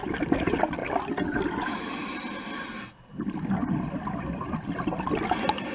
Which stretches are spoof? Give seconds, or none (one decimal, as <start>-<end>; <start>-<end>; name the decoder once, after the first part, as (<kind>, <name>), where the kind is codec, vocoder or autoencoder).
none

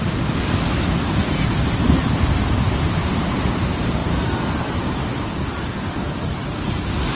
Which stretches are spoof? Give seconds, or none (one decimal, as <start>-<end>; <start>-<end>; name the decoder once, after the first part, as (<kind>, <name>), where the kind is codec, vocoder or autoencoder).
0.0-1.2 (vocoder, BigVGAN v2); 2.3-7.1

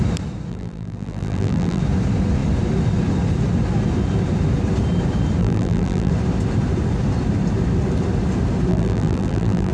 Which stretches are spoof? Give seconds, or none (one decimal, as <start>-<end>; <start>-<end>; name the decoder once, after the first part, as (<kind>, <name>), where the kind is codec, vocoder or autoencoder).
0.5-1.8 (vocoder, BigVGAN v2); 5.4-6.1; 8.7-9.7

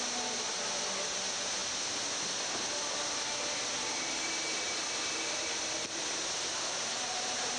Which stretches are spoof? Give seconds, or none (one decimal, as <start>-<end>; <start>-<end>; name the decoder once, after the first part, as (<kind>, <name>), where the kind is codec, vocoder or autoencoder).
none

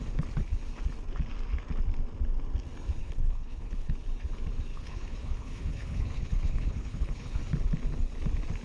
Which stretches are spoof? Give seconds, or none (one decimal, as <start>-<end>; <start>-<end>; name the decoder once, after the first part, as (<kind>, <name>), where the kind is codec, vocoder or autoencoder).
3.0-3.9 (codec, HILCodec); 4.7-7.4

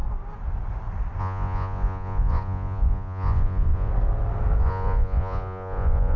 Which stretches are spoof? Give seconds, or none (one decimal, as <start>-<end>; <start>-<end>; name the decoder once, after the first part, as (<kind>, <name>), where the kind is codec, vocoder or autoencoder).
1.2-3.9 (vocoder, Vocos); 4.6-6.2